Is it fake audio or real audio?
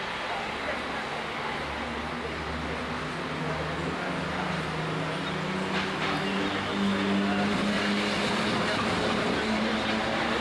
real